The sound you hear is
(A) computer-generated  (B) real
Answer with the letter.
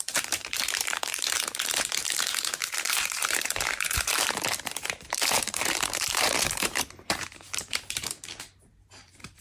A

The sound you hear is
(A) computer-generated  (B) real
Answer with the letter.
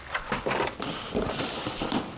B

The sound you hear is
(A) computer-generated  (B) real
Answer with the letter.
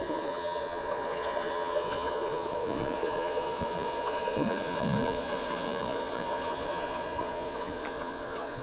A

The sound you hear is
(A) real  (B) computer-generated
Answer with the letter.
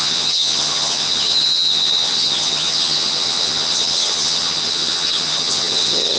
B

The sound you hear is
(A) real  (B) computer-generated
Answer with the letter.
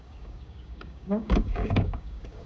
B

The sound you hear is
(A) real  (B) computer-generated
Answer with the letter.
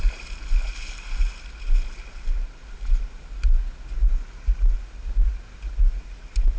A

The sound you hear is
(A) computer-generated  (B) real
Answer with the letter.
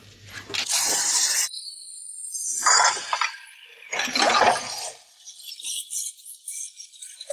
B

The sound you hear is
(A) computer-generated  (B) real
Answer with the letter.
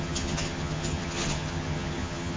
A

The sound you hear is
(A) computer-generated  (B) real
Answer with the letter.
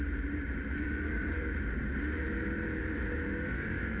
A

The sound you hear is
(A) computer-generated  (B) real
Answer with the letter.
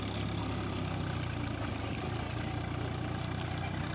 B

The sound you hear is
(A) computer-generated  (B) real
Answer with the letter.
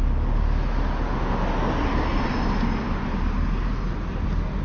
B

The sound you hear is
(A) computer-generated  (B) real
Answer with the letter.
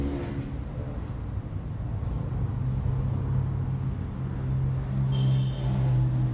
B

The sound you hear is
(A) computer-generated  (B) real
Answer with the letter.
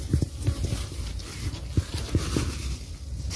B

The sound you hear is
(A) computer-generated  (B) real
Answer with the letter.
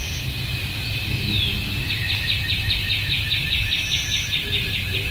B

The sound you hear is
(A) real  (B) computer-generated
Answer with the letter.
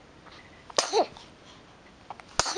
A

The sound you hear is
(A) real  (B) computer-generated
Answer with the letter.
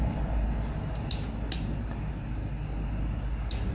A